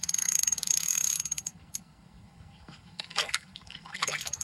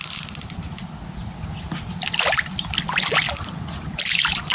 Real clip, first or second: second